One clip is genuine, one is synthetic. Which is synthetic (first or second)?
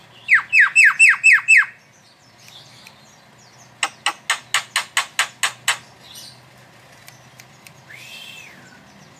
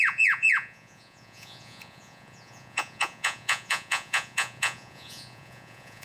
second